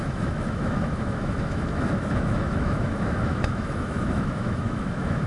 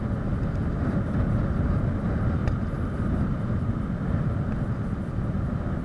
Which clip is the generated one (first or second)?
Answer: first